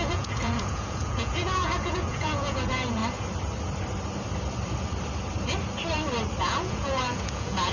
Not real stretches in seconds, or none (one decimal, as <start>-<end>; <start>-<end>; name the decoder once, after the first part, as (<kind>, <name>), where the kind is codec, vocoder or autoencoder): 0.0-3.0 (vocoder, Vocos); 6.4-7.7